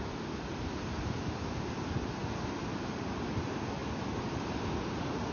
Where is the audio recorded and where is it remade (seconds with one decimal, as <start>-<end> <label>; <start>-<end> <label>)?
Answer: 0.0-5.3 recorded